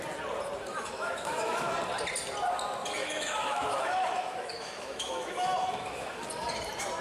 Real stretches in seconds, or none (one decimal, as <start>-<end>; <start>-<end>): 0.0-0.7; 1.7-3.0; 6.3-7.0